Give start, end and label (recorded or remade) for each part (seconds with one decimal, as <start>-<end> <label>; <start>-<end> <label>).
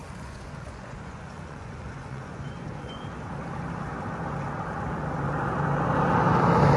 0.0-3.0 remade; 3.0-6.8 recorded